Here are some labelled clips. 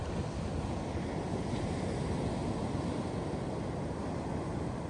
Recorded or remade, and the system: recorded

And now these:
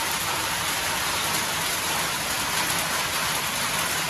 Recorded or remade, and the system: recorded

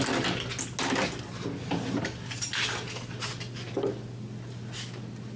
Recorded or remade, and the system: recorded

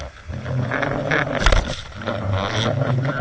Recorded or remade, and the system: recorded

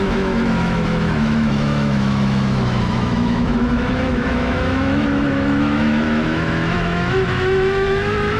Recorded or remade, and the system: remade, autoencoder, DAC-VAE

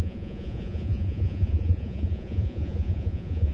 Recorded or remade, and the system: remade, vocoder, Vocos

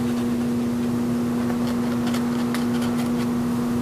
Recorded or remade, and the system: recorded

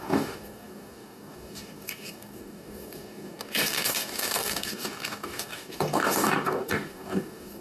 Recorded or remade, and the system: remade, codec, DAC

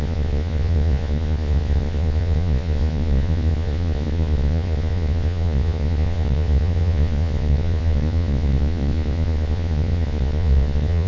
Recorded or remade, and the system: remade, vocoder, Vocos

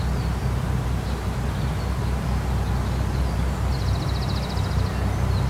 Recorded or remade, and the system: recorded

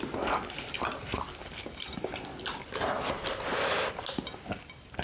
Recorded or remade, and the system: recorded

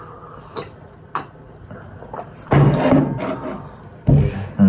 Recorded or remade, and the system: recorded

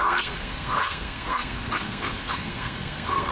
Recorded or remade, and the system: remade, codec, SNAC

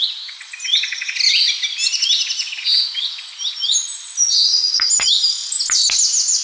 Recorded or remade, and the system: recorded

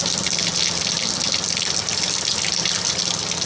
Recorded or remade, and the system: recorded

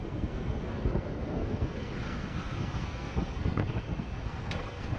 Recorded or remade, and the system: remade, codec, SNAC